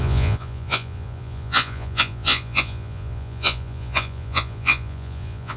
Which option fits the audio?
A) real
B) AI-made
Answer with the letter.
B